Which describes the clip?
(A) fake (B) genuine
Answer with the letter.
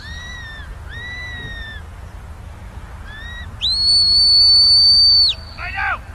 B